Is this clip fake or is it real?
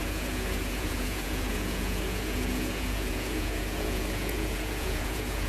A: fake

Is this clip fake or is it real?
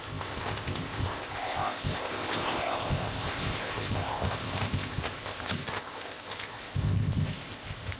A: fake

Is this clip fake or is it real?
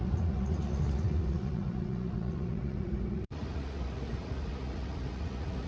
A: fake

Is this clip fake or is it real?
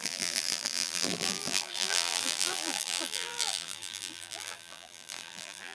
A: fake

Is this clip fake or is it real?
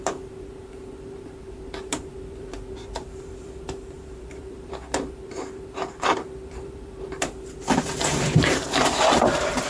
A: fake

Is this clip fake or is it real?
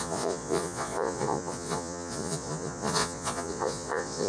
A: fake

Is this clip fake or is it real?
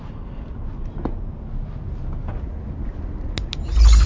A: real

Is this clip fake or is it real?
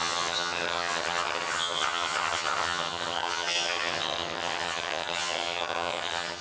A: fake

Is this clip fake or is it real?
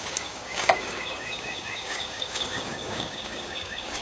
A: fake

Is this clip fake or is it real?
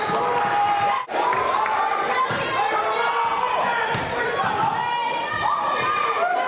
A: real